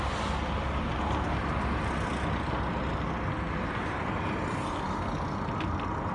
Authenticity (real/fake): real